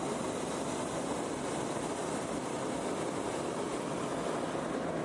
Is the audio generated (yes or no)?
no